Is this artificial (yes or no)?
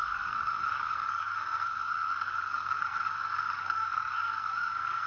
yes